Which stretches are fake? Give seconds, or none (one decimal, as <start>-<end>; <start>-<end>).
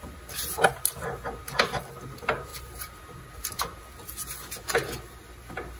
2.5-3.8